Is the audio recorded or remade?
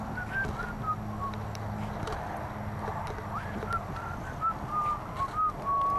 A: recorded